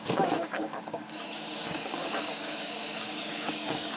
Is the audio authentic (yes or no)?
no